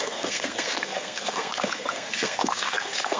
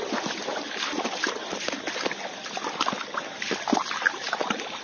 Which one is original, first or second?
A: second